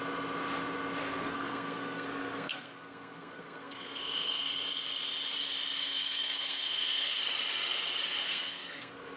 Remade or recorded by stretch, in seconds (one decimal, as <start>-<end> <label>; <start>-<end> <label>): 0.0-1.0 recorded; 1.0-4.5 remade; 4.5-5.8 recorded; 5.8-7.2 remade; 7.2-8.2 recorded; 8.2-9.2 remade